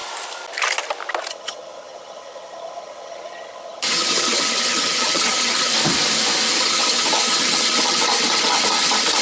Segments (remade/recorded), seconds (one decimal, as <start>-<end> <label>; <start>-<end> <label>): 0.0-1.3 recorded; 1.3-5.7 remade; 5.7-6.6 recorded; 6.6-9.2 remade